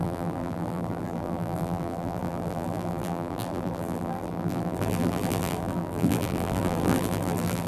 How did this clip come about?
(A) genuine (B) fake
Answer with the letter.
B